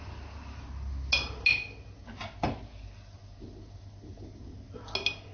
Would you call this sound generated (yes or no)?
no